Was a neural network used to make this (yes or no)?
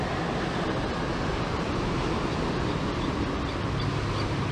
no